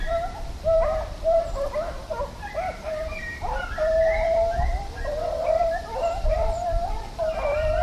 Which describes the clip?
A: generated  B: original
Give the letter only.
A